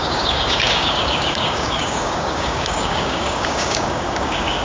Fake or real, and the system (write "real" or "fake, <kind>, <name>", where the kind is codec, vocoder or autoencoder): fake, codec, DAC